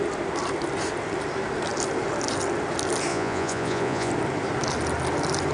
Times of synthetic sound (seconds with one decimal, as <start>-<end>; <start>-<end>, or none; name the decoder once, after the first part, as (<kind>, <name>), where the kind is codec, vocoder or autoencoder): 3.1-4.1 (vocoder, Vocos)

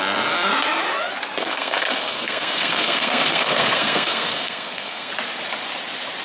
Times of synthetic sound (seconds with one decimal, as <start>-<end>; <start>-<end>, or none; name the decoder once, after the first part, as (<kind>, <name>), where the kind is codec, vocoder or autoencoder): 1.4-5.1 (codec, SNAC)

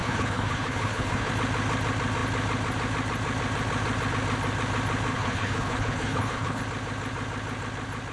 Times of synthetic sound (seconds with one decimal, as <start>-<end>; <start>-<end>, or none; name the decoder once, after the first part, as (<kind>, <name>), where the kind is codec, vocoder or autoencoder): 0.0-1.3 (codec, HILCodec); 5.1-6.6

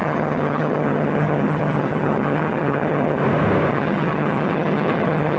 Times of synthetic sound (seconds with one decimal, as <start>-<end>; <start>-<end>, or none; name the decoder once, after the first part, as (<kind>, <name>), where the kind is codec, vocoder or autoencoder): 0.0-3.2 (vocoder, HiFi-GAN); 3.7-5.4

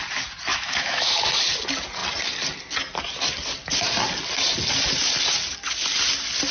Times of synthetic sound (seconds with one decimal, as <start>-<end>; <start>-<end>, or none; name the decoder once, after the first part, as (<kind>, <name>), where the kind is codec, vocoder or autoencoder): 0.5-1.3 (autoencoder, DAC-VAE)

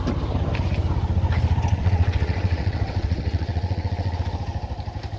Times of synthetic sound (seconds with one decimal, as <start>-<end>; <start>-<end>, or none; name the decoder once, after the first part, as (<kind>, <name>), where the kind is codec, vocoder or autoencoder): 1.7-4.2 (vocoder, WaveNeXt)